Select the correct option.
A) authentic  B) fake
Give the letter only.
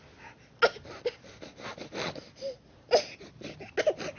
A